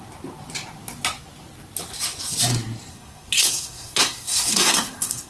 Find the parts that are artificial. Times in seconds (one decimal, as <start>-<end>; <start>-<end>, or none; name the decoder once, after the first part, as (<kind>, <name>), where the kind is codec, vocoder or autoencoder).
2.9-5.3 (codec, SNAC)